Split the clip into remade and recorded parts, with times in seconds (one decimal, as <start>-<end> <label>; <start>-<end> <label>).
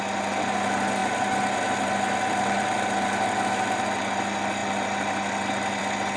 0.0-6.2 recorded